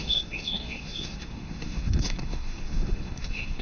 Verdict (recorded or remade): remade